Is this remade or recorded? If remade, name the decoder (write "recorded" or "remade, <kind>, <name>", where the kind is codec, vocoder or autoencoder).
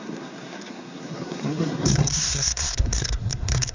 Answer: remade, codec, SNAC